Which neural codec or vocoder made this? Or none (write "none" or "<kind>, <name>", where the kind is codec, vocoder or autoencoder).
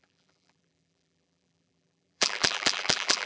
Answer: vocoder, BigVGAN v2